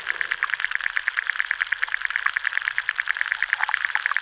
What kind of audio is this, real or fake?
real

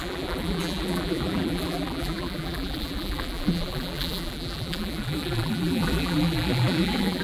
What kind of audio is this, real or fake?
fake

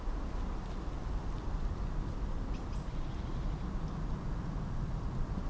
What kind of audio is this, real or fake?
real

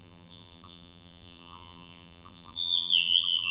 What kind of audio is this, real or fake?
fake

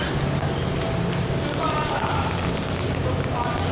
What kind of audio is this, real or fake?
real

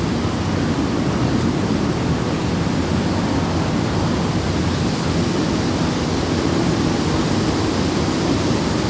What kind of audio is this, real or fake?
real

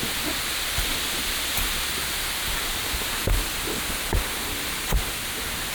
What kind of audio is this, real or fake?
real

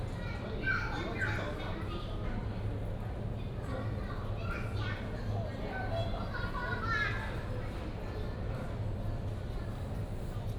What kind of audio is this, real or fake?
real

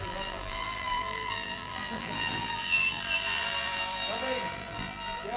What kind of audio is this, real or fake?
fake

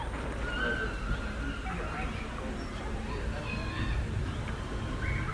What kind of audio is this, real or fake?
real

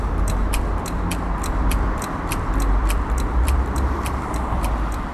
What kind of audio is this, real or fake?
fake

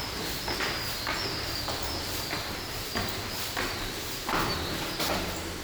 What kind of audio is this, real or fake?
fake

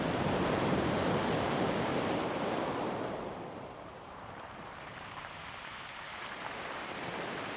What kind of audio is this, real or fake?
fake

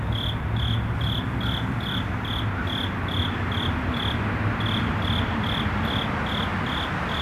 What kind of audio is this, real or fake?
real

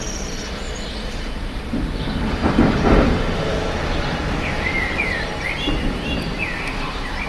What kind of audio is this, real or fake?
fake